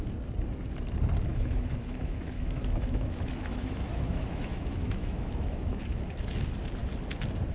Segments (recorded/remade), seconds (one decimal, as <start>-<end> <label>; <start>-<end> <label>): 0.0-1.3 recorded; 1.3-5.8 remade; 5.8-7.5 recorded